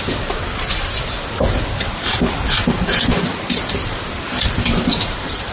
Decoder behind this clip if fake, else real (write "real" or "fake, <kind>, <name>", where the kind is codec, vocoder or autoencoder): fake, vocoder, BigVGAN v2